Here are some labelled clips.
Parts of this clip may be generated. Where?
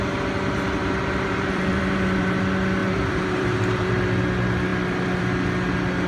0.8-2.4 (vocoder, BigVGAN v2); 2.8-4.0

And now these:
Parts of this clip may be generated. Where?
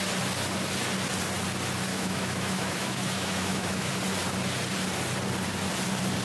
1.9-3.9 (autoencoder, DAC-VAE)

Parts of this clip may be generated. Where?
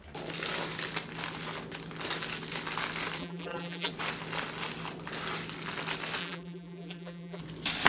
3.2-3.9 (vocoder, BigVGAN v2); 6.2-7.4